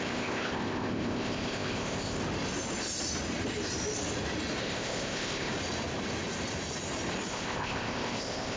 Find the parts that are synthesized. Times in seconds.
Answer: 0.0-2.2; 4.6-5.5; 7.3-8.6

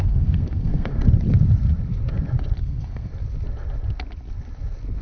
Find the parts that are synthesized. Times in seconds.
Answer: 0.0-0.9; 2.6-3.1

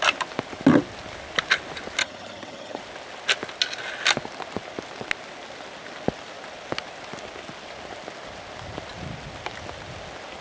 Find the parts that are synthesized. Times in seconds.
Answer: 2.0-2.8

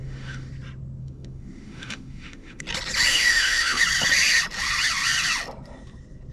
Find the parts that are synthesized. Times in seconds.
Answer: 0.0-0.5; 1.0-2.6; 3.1-3.8